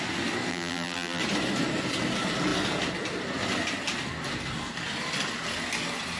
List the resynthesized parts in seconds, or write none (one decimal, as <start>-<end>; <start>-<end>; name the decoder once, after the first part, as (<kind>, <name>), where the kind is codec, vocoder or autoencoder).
0.5-1.2 (vocoder, BigVGAN v2)